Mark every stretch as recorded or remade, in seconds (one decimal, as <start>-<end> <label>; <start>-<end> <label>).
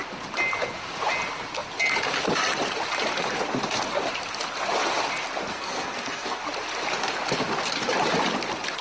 0.0-5.5 recorded; 5.5-6.4 remade; 6.4-8.8 recorded